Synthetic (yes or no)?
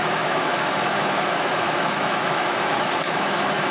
yes